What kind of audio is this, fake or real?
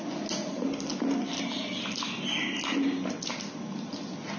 real